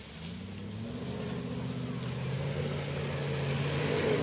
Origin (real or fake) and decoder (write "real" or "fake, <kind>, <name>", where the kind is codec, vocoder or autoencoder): real